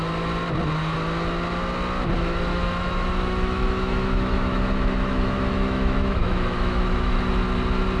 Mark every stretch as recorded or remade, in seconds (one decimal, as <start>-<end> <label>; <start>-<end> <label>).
0.0-2.5 recorded; 2.5-7.3 remade; 7.3-8.0 recorded